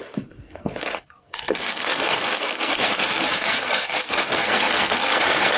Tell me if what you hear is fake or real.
fake